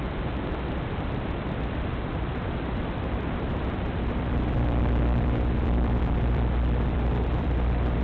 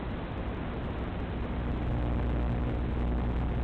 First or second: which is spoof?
first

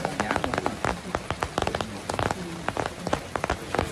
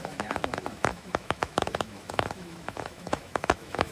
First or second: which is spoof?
second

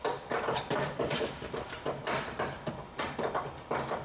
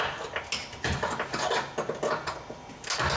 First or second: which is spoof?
first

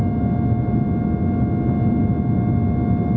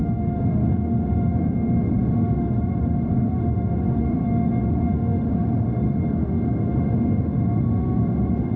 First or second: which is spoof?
second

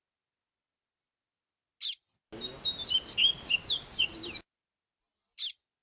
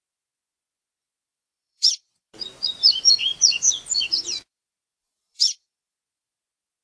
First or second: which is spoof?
second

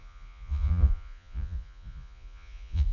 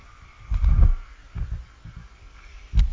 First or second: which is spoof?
first